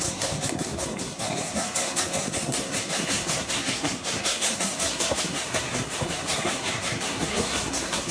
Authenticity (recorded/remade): remade